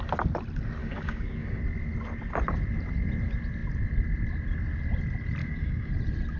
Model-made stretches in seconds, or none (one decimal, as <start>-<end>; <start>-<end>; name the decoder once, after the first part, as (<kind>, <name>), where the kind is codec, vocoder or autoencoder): 0.8-1.6 (codec, DAC); 5.4-5.9